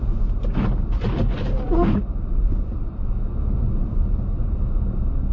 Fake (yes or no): no